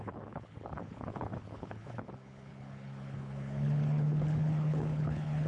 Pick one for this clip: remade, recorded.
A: remade